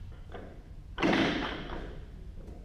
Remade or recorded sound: recorded